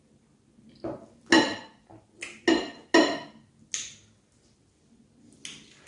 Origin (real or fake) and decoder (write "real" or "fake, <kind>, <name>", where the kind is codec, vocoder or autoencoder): real